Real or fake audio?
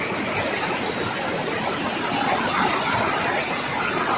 real